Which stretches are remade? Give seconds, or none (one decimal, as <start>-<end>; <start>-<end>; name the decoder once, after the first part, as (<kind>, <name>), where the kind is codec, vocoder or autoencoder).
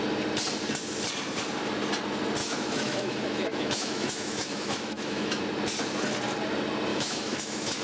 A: 2.4-5.4 (autoencoder, DAC-VAE); 6.9-7.8